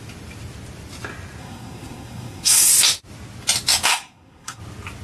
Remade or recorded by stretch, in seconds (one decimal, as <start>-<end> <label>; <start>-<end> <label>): 0.0-1.4 recorded; 1.4-2.7 remade; 2.7-3.9 recorded; 3.9-4.6 remade; 4.6-5.0 recorded